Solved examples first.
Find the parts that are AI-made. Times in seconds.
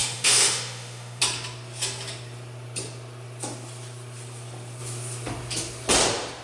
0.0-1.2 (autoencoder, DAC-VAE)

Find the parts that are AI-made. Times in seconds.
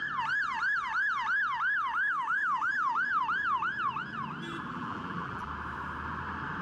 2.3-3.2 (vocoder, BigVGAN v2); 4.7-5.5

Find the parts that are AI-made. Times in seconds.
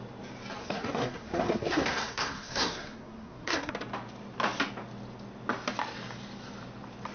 0.6-3.7 (codec, SNAC)